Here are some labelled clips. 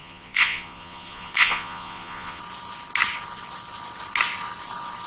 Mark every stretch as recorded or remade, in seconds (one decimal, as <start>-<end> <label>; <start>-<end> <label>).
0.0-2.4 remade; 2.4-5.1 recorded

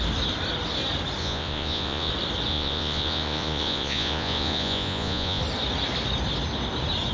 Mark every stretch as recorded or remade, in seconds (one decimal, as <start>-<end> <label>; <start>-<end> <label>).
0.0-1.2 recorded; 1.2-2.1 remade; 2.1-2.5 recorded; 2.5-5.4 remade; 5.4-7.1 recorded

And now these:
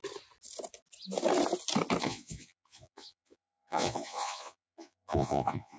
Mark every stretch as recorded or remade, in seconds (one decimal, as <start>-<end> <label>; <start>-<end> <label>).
0.0-2.0 recorded; 2.0-5.8 remade

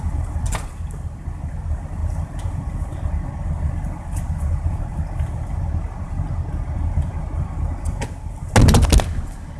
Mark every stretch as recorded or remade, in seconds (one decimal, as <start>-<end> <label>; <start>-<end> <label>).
0.0-9.6 recorded

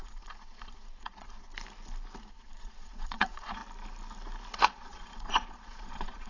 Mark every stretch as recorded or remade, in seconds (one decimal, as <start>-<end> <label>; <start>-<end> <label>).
0.0-1.5 remade; 1.5-2.3 recorded; 2.3-3.6 remade; 3.6-4.5 recorded; 4.5-6.3 remade

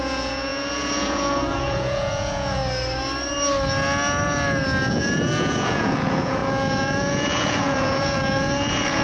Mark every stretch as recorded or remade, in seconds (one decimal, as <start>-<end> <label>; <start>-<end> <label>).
0.0-2.6 remade; 2.6-4.9 recorded; 4.9-9.0 remade

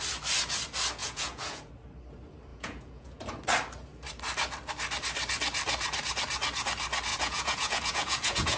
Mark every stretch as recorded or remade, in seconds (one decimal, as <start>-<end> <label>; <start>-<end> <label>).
0.0-1.0 recorded; 1.0-1.7 remade; 1.7-2.5 recorded; 2.5-3.2 remade; 3.2-7.1 recorded; 7.1-8.6 remade

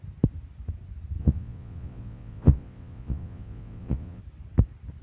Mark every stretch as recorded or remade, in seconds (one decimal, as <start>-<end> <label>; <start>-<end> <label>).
0.0-1.2 recorded; 1.2-4.2 remade; 4.2-5.0 recorded